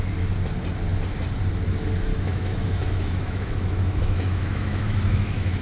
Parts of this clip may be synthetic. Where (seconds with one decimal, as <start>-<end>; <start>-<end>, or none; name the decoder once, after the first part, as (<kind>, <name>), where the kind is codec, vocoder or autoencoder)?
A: 2.1-5.6 (autoencoder, DAC-VAE)